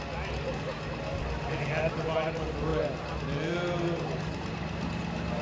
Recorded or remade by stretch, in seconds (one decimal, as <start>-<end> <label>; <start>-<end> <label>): 0.0-5.4 recorded